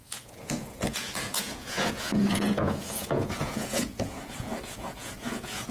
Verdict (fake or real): fake